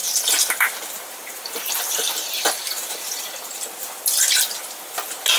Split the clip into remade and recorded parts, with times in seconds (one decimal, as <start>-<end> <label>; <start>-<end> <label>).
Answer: 0.0-3.2 remade; 3.2-5.4 recorded